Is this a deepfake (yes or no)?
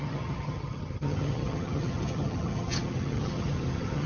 yes